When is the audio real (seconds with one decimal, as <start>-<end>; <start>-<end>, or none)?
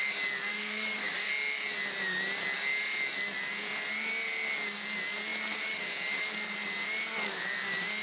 0.0-0.5; 1.3-8.0